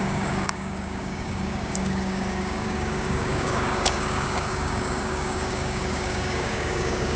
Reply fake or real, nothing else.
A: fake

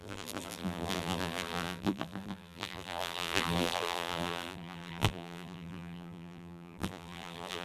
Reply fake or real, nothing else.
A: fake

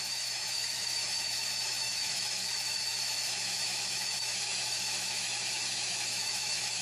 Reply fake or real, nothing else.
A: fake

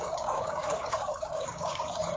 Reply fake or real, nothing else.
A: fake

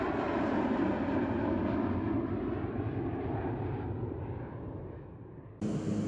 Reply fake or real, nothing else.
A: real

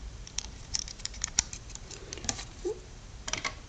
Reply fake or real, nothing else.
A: fake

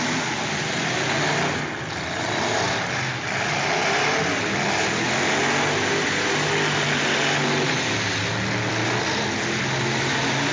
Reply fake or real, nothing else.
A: real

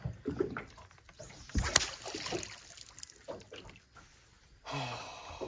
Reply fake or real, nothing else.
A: real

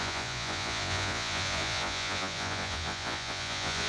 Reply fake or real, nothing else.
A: fake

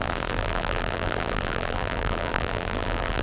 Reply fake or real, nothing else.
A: fake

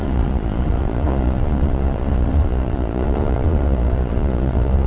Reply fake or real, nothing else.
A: fake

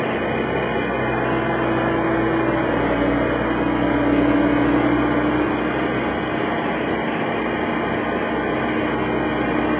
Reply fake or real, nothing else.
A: real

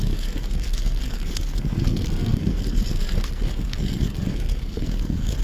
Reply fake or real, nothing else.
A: fake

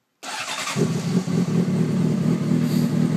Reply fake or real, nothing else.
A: real